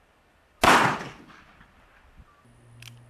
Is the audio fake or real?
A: real